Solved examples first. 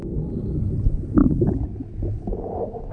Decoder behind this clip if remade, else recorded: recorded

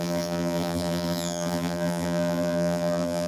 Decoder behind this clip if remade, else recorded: remade, vocoder, BigVGAN v2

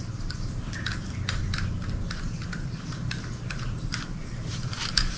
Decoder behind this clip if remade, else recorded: remade, vocoder, BigVGAN v2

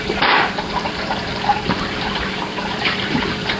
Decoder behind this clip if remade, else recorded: remade, vocoder, BigVGAN v2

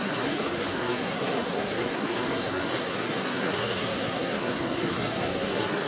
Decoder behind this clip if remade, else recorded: remade, codec, SNAC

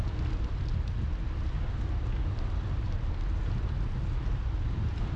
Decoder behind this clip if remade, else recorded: recorded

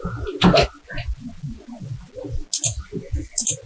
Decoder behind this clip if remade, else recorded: recorded